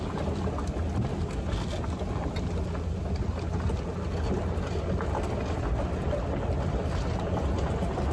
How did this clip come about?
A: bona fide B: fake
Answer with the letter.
A